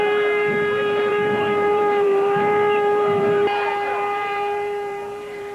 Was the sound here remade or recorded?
remade